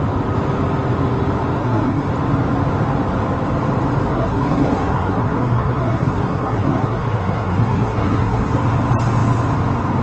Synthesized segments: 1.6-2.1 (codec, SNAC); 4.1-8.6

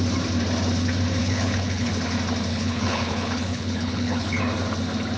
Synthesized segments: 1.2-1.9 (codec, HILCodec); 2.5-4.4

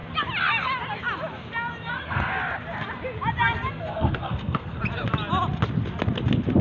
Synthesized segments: 1.9-2.3 (codec, SNAC); 3.7-4.8

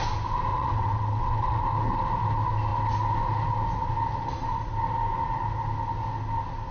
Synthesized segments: 0.5-1.6 (vocoder, WaveNeXt)